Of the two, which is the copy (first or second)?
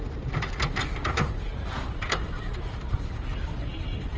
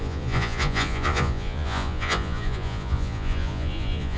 second